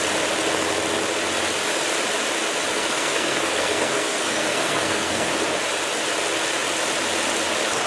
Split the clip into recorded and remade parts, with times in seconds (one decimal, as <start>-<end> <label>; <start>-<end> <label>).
0.0-2.7 recorded; 2.7-5.3 remade; 5.3-7.9 recorded